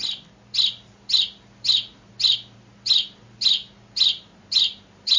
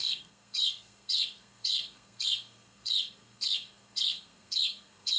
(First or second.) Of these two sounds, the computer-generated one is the second